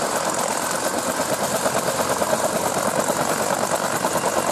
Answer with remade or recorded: remade